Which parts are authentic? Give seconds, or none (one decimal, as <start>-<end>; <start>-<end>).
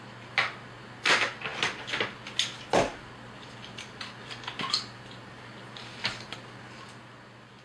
0.0-7.6